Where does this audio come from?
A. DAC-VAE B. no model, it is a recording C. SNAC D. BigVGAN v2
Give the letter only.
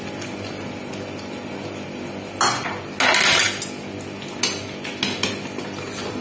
B